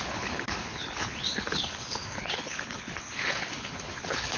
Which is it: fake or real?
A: fake